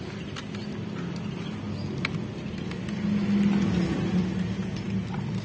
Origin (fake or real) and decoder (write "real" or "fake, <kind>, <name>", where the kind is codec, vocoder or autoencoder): real